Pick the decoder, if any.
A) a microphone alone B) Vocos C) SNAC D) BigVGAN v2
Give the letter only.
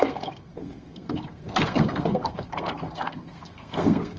C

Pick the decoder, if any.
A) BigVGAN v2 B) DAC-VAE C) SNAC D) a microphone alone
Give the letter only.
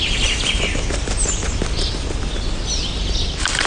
D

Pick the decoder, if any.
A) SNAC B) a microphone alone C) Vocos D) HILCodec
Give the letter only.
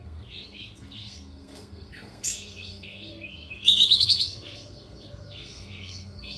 A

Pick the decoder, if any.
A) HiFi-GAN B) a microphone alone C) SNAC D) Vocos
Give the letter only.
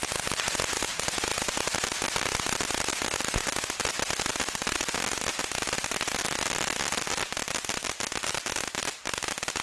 B